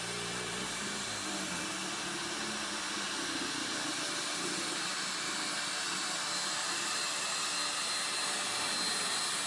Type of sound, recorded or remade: recorded